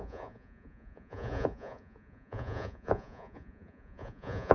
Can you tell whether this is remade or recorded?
remade